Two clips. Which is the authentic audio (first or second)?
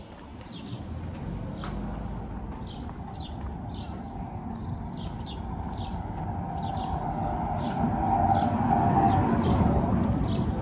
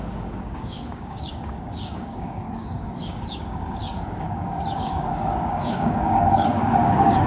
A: first